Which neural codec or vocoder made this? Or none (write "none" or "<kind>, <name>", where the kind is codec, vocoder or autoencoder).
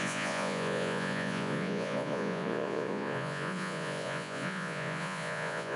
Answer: vocoder, Vocos